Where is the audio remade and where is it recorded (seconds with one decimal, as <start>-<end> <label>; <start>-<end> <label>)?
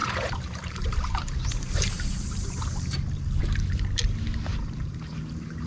0.0-3.4 remade; 3.4-4.5 recorded; 4.5-5.7 remade